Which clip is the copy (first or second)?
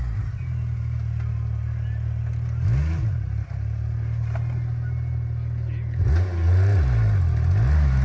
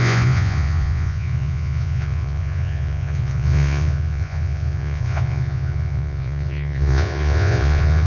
second